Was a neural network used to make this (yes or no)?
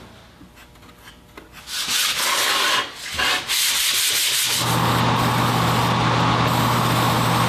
no